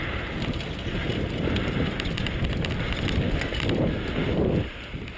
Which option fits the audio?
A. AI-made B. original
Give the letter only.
B